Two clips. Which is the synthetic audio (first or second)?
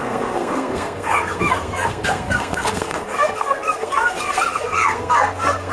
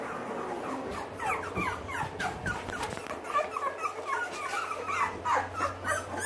first